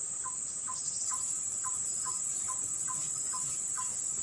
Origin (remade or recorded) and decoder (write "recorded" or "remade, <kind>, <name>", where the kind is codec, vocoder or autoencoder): recorded